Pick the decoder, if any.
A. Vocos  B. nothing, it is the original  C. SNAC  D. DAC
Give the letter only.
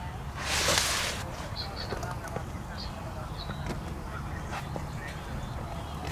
B